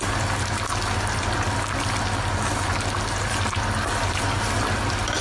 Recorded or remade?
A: recorded